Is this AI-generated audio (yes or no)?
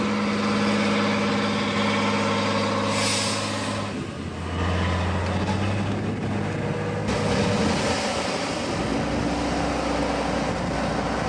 no